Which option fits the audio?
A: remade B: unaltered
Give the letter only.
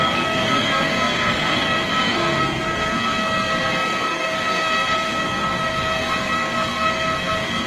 A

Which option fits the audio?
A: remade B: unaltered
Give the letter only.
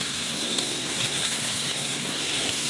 A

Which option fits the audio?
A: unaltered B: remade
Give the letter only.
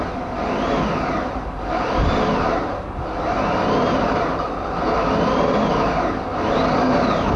A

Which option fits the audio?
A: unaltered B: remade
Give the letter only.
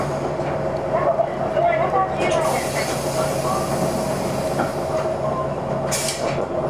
A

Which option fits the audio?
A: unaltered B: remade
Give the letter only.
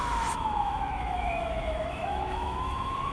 B